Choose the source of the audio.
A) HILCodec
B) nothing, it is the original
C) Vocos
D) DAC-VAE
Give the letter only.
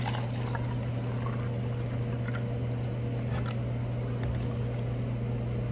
B